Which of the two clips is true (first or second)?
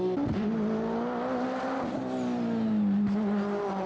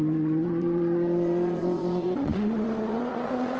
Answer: first